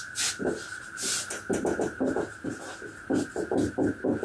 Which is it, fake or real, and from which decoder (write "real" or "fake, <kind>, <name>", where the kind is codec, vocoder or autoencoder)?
real